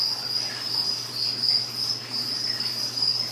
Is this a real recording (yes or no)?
no